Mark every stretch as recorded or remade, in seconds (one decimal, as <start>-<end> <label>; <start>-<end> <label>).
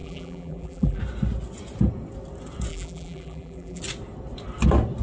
0.0-1.0 remade; 1.0-2.7 recorded; 2.7-3.8 remade; 3.8-5.0 recorded